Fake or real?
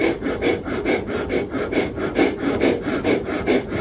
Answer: real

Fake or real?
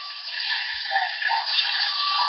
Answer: fake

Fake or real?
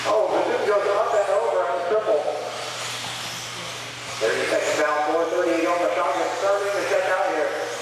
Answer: real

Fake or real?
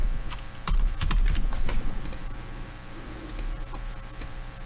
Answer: real